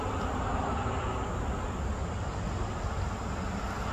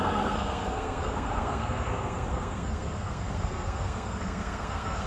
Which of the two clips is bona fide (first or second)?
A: first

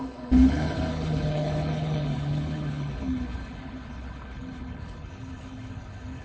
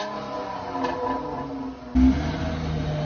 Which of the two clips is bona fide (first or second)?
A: second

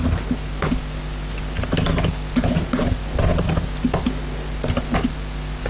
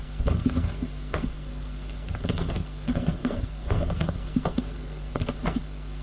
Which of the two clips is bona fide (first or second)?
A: first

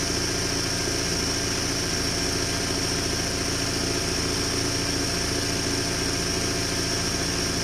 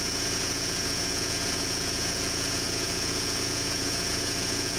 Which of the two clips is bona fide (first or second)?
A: first